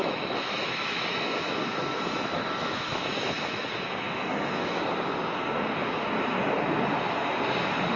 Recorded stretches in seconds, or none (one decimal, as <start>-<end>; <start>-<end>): 4.8-8.0

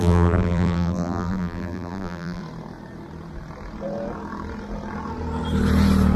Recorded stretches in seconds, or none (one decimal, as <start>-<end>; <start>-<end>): 2.4-6.2

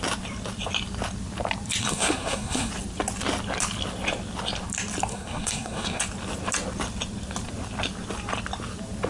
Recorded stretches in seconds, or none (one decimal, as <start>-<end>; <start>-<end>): 0.0-1.8; 2.7-5.1; 6.0-9.1